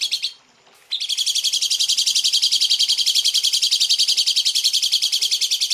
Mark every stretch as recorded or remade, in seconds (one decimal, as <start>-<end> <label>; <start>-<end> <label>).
0.0-5.7 recorded